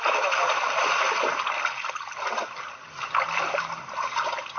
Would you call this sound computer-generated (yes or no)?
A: no